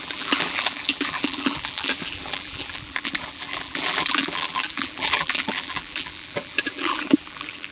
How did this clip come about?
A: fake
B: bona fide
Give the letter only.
A